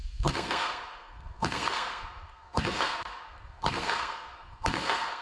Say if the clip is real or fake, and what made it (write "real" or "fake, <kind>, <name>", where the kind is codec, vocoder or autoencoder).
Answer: fake, codec, SNAC